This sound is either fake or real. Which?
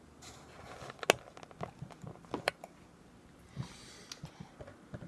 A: real